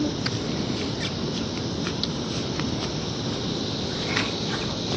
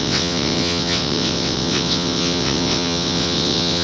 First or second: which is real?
first